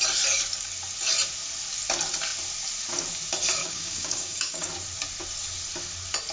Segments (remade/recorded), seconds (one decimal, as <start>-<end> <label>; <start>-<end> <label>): 0.0-3.6 recorded; 3.6-4.7 remade; 4.7-6.3 recorded